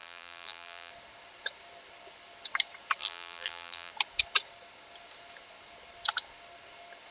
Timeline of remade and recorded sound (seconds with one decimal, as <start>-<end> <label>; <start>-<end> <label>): 0.0-0.9 remade; 0.9-3.0 recorded; 3.0-3.9 remade; 3.9-7.1 recorded